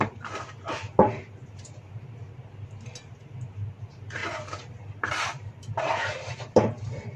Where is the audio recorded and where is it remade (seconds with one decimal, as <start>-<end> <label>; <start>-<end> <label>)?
0.0-2.2 remade; 2.2-3.1 recorded; 3.1-7.2 remade